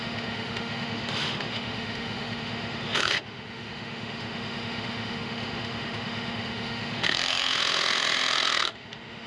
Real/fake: fake